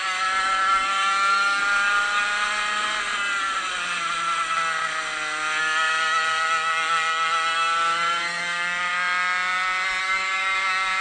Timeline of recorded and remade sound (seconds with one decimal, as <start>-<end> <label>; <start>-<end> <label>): 0.0-1.6 remade; 1.6-5.6 recorded; 5.6-8.9 remade; 8.9-10.0 recorded; 10.0-11.0 remade